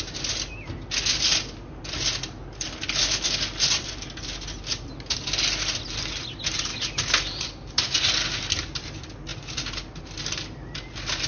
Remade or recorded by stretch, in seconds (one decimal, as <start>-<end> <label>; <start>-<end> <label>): 0.0-11.3 recorded